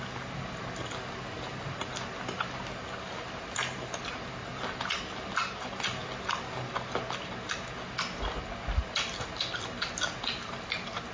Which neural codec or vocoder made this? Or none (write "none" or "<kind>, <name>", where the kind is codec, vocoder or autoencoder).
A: none